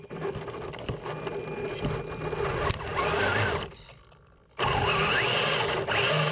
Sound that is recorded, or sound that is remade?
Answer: recorded